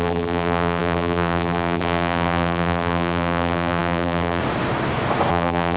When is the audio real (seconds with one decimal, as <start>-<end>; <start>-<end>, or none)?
4.4-5.3